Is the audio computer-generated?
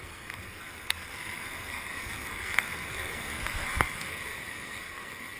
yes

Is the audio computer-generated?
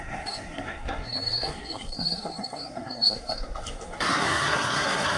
yes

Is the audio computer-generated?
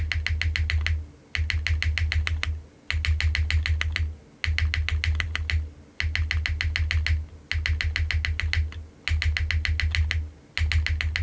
no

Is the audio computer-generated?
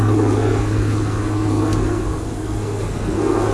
yes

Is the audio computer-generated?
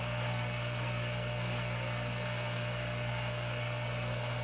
yes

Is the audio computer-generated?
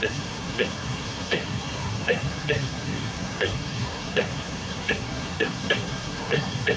yes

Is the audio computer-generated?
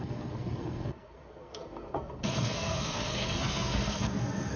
yes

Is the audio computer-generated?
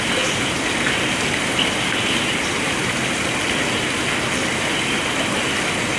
no